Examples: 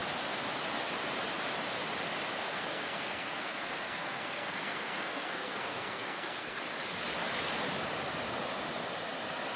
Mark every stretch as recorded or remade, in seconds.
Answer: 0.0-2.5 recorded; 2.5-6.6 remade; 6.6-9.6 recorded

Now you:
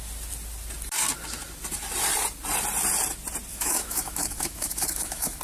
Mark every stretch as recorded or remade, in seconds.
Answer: 0.0-3.5 recorded; 3.5-5.4 remade

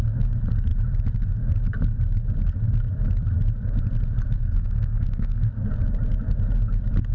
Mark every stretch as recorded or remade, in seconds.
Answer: 0.0-4.4 recorded; 4.4-5.5 remade; 5.5-7.1 recorded

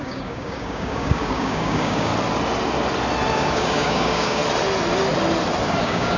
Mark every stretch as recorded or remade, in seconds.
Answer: 0.0-2.1 remade; 2.1-3.3 recorded; 3.3-4.4 remade; 4.4-5.8 recorded; 5.8-6.2 remade

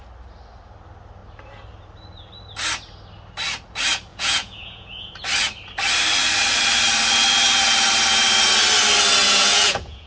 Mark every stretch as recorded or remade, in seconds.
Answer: 0.0-4.1 recorded; 4.1-5.1 remade; 5.1-9.2 recorded; 9.2-10.1 remade

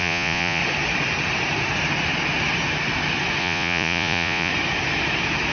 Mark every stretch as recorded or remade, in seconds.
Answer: 0.0-0.6 remade; 0.6-3.4 recorded; 3.4-4.5 remade; 4.5-5.5 recorded

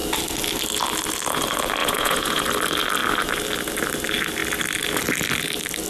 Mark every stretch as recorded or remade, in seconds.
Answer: 0.0-1.8 recorded; 1.8-2.4 remade; 2.4-5.9 recorded

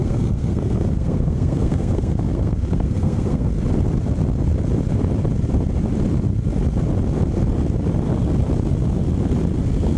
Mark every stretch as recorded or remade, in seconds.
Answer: 0.0-3.5 remade; 3.5-10.0 recorded